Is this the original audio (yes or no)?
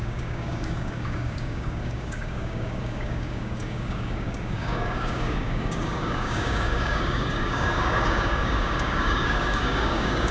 no